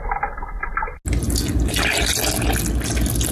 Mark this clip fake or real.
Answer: real